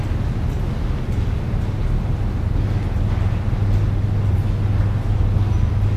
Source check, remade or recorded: recorded